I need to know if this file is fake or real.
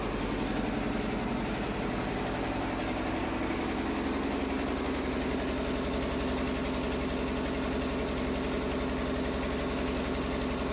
real